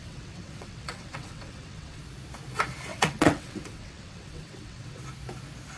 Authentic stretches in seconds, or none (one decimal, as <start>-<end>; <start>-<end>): 2.0-2.9; 5.0-5.8